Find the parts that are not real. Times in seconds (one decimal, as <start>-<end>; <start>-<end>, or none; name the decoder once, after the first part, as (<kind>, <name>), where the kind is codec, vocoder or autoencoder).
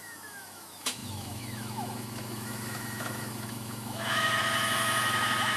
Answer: 0.0-5.6 (autoencoder, DAC-VAE)